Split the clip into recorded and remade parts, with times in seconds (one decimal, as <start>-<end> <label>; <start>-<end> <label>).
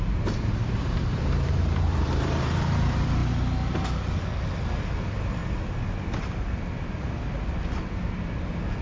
0.0-3.2 remade; 3.2-5.0 recorded; 5.0-5.4 remade; 5.4-8.8 recorded